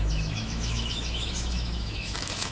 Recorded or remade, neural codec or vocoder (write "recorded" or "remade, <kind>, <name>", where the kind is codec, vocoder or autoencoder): remade, autoencoder, DAC-VAE